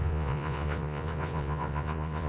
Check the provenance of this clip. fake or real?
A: fake